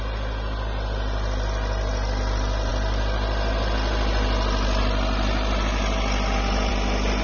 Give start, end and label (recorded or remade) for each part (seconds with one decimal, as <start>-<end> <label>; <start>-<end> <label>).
0.0-7.2 recorded